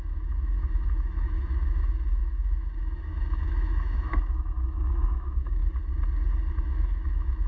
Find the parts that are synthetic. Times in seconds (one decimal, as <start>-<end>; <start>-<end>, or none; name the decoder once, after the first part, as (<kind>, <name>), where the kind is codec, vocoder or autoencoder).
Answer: 0.0-5.6 (autoencoder, DAC-VAE); 6.6-7.5